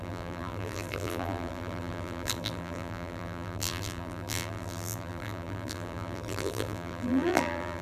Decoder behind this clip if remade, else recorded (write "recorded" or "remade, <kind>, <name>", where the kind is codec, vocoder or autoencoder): remade, vocoder, BigVGAN v2